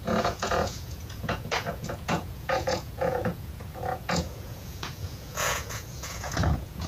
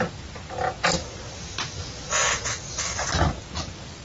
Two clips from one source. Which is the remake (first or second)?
first